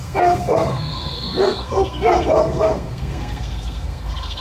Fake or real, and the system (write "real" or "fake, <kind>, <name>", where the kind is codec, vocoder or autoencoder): fake, codec, SNAC